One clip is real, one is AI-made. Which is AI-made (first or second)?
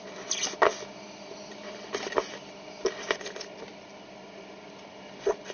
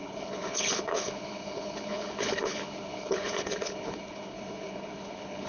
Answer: second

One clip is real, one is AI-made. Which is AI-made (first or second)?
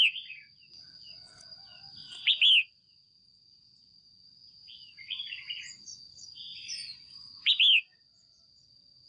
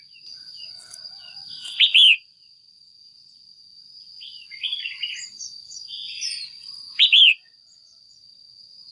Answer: second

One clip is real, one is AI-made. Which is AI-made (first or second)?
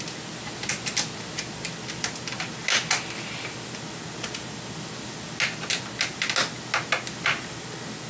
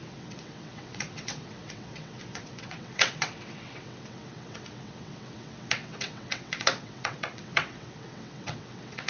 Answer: second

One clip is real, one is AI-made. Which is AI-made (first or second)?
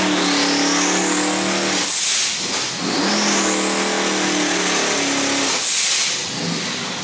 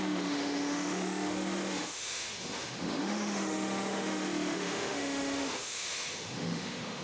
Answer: second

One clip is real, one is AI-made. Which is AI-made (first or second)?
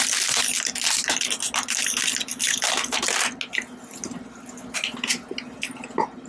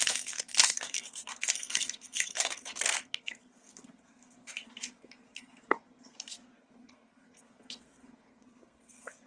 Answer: second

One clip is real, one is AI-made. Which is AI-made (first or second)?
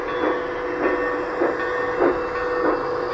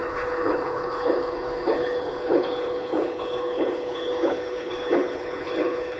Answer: second